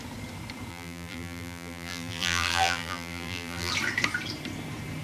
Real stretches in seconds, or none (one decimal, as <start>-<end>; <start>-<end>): 0.0-0.7; 3.7-5.0